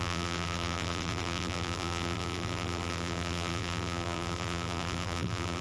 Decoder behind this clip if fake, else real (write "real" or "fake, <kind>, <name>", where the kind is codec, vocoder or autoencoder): fake, vocoder, BigVGAN v2